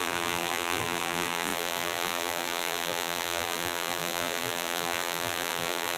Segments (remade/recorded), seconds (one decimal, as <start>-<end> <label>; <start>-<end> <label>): 0.0-6.0 remade